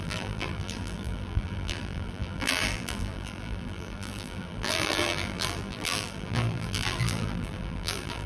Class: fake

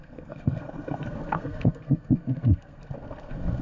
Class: fake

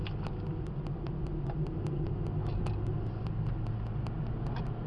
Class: real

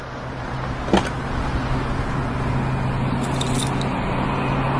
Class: real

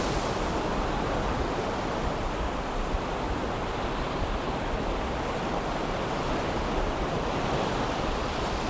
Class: real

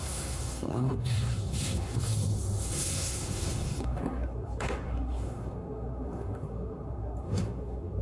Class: fake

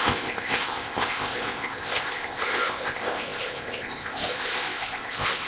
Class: fake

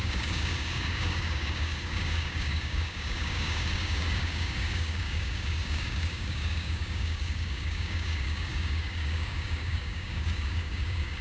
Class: fake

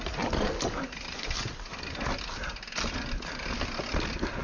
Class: real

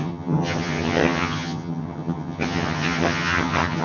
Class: fake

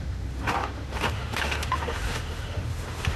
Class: fake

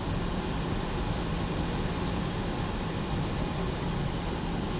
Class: real